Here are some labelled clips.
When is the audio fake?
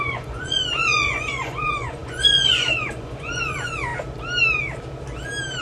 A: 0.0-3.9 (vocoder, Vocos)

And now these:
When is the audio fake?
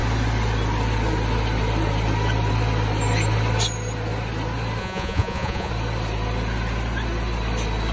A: 4.8-5.7 (vocoder, Vocos)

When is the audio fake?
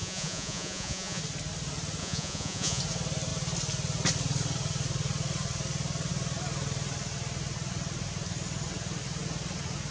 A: 0.0-1.2 (vocoder, Vocos); 2.0-2.8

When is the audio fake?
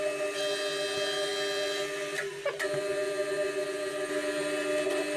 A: none